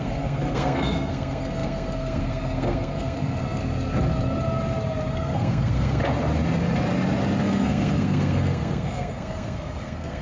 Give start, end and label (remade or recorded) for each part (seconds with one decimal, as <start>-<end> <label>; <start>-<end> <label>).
0.0-3.6 remade; 3.6-5.1 recorded; 5.1-6.0 remade; 6.0-7.4 recorded; 7.4-10.2 remade